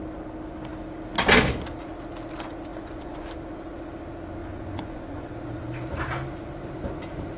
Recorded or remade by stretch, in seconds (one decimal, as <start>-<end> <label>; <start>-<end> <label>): 0.0-2.7 recorded; 2.7-3.3 remade; 3.3-4.4 recorded; 4.4-5.3 remade; 5.3-7.4 recorded